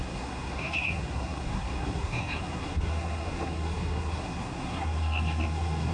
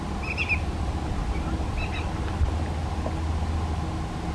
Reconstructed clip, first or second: first